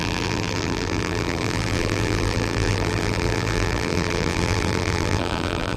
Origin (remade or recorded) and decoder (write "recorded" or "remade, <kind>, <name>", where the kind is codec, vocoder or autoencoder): remade, vocoder, BigVGAN v2